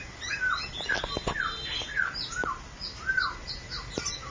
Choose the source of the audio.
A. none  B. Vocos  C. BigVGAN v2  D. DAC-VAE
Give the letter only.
A